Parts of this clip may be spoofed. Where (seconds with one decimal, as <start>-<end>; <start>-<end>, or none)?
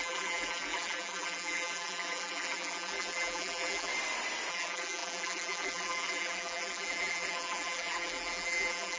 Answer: 0.0-3.9; 4.5-9.0